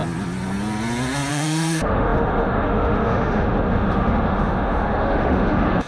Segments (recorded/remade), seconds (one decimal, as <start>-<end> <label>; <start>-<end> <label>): 0.0-1.3 recorded; 1.3-5.9 remade